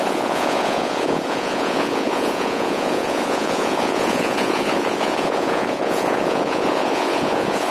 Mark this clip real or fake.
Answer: fake